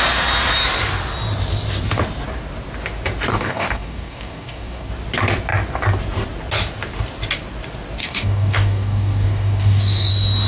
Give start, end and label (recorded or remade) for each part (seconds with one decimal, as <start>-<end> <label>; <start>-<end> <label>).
0.0-3.3 recorded; 3.3-4.9 remade; 4.9-8.0 recorded; 8.0-10.1 remade; 10.1-10.5 recorded